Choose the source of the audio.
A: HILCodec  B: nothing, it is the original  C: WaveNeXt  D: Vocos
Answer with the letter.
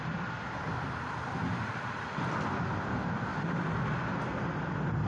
B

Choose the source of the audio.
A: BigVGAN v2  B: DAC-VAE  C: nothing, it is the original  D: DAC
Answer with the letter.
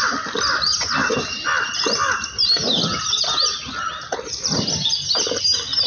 C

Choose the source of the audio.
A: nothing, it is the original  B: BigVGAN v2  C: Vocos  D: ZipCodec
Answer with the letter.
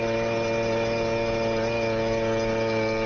A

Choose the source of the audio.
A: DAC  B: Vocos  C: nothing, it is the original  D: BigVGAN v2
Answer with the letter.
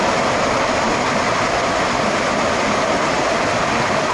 C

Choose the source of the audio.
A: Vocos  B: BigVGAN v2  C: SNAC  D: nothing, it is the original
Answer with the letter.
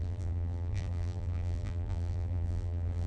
B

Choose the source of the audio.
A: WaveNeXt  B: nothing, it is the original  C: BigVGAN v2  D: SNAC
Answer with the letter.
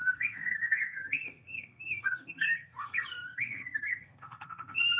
D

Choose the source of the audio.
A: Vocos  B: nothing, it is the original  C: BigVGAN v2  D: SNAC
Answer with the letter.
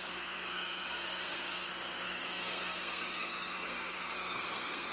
D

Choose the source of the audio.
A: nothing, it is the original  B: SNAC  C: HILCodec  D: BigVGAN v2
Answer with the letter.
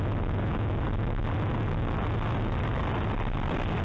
A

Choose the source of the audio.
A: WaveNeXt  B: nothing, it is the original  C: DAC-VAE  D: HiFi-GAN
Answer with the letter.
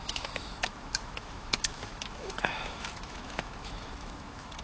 C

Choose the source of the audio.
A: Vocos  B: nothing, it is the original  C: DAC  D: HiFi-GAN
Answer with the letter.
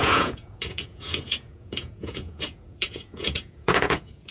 A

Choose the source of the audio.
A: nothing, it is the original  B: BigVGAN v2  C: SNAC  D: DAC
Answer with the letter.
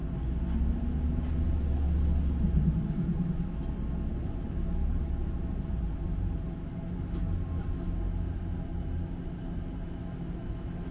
A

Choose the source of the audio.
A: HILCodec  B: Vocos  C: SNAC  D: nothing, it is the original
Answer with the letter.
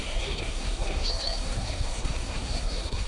C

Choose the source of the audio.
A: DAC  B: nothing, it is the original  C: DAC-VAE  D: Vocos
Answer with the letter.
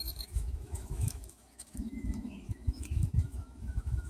C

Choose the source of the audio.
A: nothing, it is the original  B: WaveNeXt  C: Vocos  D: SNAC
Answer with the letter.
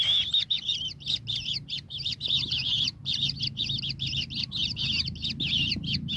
A